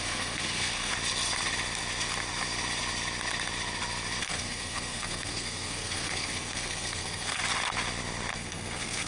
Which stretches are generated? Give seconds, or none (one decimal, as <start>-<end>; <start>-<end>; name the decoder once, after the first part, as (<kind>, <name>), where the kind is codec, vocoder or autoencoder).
0.0-0.9 (codec, SNAC); 4.2-7.4; 8.3-9.1